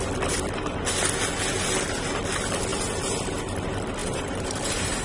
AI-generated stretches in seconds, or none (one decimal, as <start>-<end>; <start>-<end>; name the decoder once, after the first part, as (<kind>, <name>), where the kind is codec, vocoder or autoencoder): 4.0-5.0 (vocoder, BigVGAN v2)